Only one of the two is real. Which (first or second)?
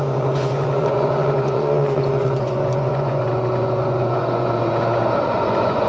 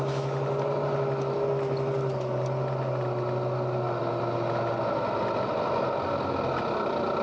second